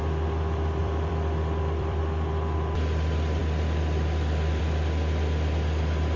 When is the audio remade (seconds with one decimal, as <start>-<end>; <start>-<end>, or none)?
0.8-2.0; 3.4-4.6